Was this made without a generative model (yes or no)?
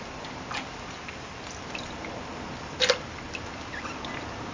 yes